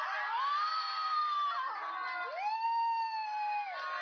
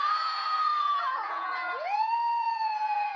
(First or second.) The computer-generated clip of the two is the second